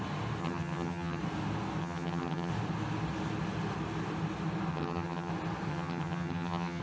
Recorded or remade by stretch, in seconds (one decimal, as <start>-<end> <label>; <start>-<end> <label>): 0.0-0.4 recorded; 0.4-1.2 remade; 1.2-1.8 recorded; 1.8-2.5 remade; 2.5-4.7 recorded; 4.7-5.3 remade; 5.3-5.7 recorded; 5.7-6.8 remade